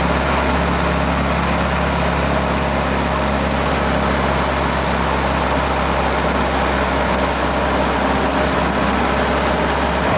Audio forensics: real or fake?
real